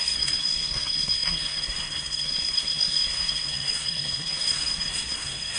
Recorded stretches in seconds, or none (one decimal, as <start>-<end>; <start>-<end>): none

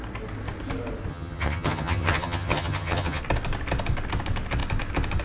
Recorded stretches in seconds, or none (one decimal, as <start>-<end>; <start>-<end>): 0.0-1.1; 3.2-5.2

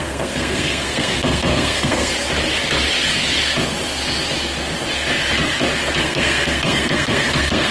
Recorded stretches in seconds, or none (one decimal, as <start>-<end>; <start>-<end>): 2.1-6.0

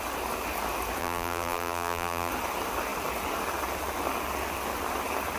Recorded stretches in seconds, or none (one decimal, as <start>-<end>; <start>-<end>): 0.0-1.0; 2.3-5.4

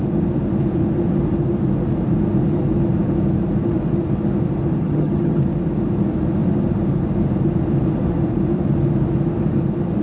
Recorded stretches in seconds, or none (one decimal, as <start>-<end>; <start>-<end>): 0.0-4.8; 5.4-10.0

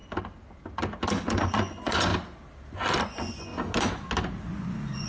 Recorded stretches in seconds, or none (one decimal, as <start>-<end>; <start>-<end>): 0.0-1.4; 2.1-3.0; 3.5-4.4

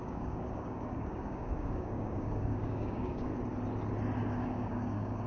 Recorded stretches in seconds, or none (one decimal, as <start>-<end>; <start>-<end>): 3.3-4.2